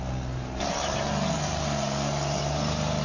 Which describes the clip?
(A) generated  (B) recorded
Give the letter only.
B